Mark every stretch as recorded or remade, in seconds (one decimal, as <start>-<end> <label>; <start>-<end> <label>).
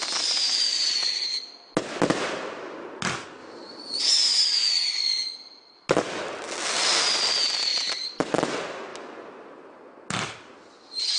0.0-3.4 recorded; 3.4-4.1 remade; 4.1-7.7 recorded; 7.7-8.5 remade; 8.5-11.2 recorded